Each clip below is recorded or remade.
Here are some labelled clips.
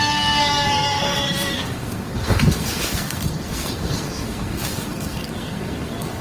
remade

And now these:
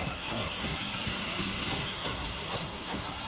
remade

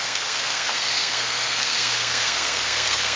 remade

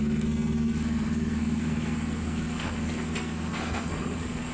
remade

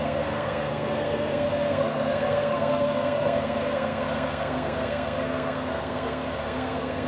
remade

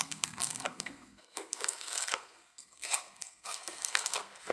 remade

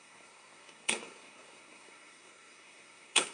remade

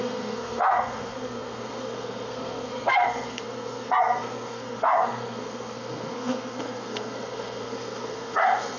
remade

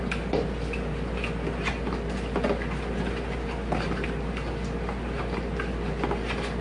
recorded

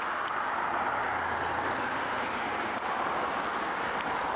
recorded